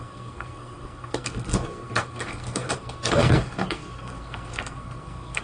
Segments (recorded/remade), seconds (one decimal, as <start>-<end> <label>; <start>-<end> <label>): 0.0-5.4 remade

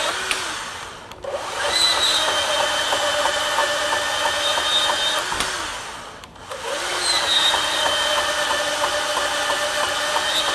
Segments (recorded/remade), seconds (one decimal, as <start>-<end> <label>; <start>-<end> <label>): 0.0-10.5 recorded

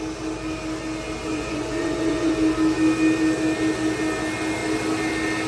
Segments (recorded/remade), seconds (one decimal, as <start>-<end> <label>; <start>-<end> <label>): 0.0-1.3 recorded; 1.3-2.3 remade; 2.3-5.5 recorded

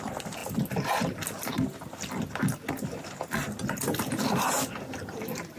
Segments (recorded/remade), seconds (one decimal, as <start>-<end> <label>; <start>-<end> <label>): 0.0-5.6 recorded